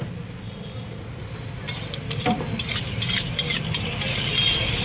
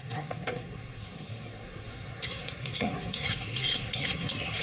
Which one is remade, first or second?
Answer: second